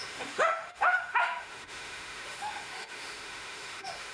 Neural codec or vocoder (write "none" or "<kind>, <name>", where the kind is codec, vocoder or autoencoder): autoencoder, DAC-VAE